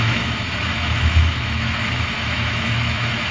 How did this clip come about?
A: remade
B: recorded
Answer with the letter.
A